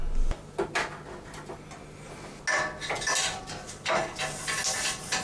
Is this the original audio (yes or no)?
yes